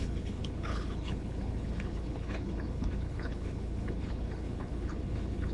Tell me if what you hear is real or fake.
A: fake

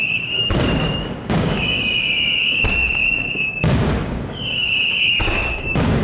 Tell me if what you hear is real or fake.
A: fake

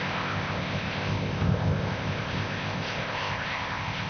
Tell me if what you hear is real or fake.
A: fake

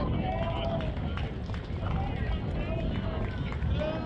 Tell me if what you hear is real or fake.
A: real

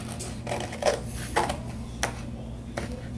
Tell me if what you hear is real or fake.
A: real